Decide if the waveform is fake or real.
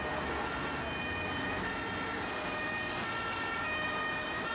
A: real